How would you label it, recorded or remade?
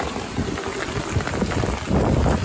recorded